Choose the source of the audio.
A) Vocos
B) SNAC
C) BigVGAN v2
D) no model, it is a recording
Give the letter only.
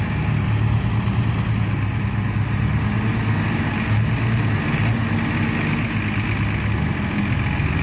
D